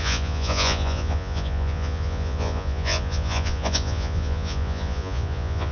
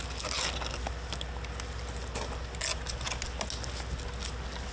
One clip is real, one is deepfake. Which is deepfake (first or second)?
first